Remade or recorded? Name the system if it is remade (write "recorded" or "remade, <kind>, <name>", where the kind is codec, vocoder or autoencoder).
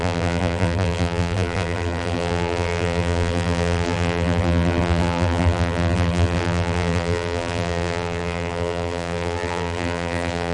remade, vocoder, BigVGAN v2